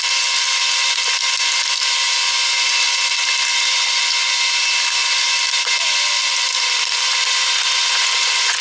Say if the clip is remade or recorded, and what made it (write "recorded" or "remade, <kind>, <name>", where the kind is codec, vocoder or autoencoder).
recorded